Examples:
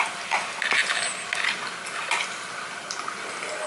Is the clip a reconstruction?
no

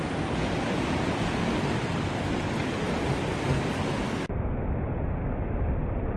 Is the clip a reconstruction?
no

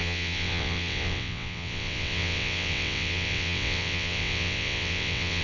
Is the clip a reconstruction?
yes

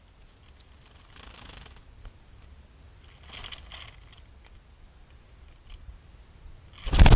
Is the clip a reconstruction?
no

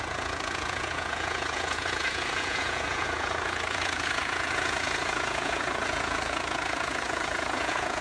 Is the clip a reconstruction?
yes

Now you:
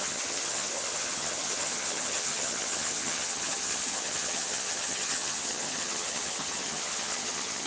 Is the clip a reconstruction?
yes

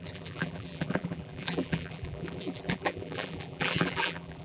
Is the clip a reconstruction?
yes